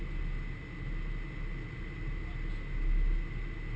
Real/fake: real